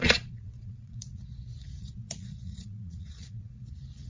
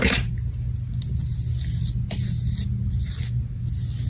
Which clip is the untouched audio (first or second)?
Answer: second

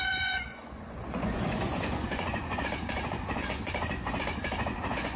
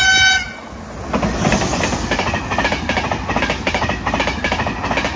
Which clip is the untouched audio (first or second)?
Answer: second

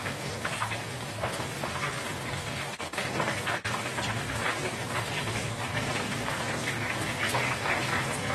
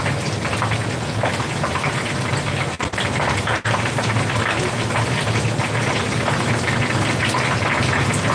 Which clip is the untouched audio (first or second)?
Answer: second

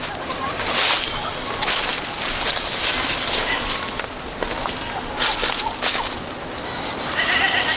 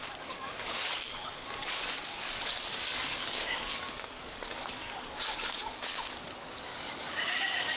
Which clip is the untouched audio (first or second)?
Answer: first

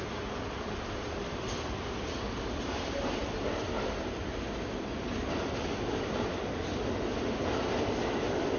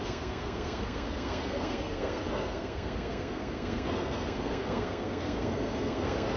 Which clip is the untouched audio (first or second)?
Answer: first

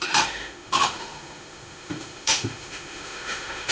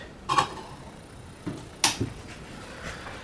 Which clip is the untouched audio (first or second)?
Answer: second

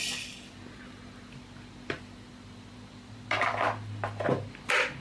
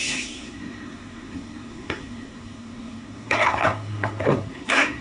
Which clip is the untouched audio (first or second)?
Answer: first